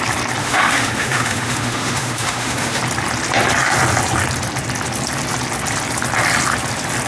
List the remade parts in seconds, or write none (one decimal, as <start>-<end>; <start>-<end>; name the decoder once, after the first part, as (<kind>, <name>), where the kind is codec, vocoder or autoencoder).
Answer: 0.4-2.8 (autoencoder, DAC-VAE)